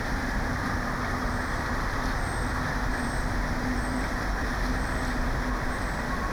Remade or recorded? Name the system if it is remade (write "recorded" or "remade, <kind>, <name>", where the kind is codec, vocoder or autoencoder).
remade, vocoder, BigVGAN v2